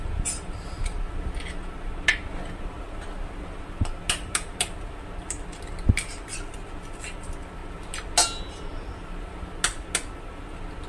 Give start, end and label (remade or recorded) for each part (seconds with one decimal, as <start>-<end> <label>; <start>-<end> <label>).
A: 0.0-10.9 recorded